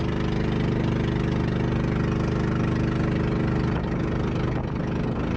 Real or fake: real